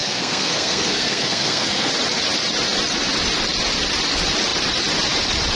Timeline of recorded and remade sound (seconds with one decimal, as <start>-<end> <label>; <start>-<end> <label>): 0.0-1.9 remade; 1.9-5.6 recorded